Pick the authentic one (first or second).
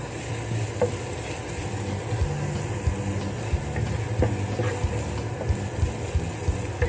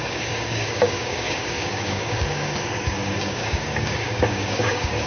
first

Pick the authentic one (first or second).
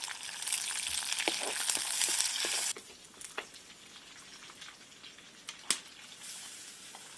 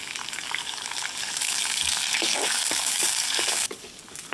first